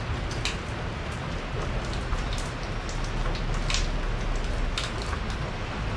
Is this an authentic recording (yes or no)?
yes